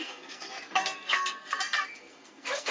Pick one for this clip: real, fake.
fake